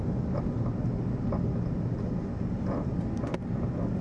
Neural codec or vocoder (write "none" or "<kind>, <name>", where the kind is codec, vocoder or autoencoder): none